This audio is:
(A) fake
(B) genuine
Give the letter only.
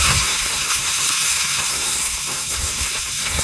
A